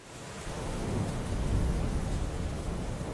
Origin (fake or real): fake